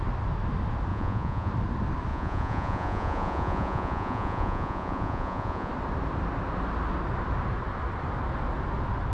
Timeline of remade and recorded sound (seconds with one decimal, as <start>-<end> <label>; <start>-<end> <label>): 0.0-0.9 recorded; 0.9-1.5 remade; 1.5-2.1 recorded; 2.1-5.7 remade; 5.7-9.1 recorded